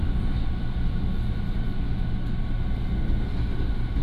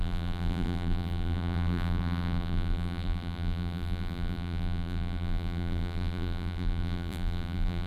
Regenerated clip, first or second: second